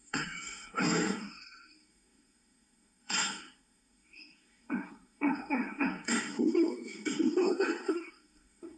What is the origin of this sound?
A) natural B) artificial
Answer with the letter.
B